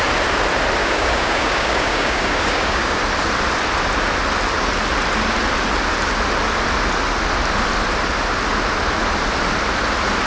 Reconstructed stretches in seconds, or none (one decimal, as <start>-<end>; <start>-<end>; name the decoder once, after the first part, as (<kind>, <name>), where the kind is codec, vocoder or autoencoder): 0.8-3.0 (codec, DAC)